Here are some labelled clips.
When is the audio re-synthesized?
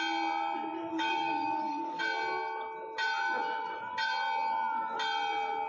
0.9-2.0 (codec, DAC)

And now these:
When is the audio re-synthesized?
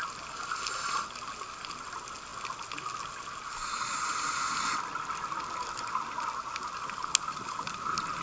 none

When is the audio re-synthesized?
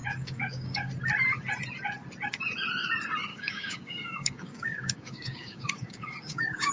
0.0-0.9 (codec, DAC); 3.3-6.7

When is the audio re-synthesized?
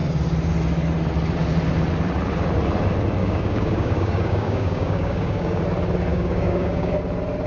3.2-5.6 (codec, DAC); 6.1-6.9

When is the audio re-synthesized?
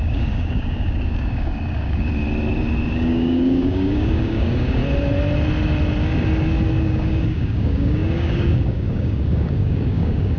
0.0-2.1 (codec, DAC); 2.9-4.8; 6.7-10.4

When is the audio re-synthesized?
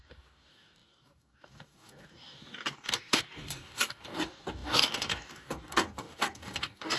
0.0-7.0 (codec, DAC)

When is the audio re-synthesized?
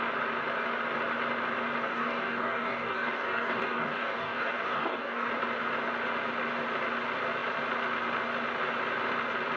1.8-5.3 (codec, DAC)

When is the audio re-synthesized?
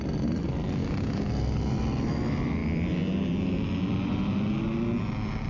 0.8-1.3 (codec, DAC)